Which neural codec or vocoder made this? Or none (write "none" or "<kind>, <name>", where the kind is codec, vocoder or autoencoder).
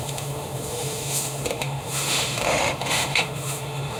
autoencoder, DAC-VAE